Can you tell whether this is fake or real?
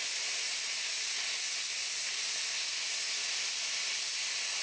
real